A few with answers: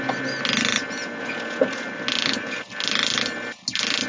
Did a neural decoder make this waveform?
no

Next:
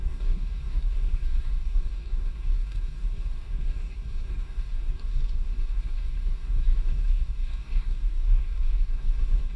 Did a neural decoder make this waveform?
yes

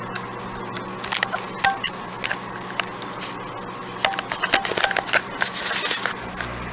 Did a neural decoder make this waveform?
no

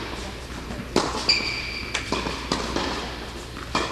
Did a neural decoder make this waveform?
no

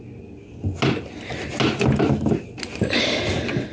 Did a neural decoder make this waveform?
no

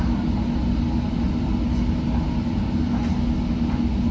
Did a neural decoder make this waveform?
no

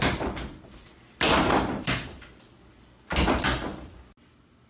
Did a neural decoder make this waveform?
no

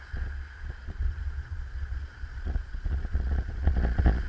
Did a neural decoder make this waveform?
yes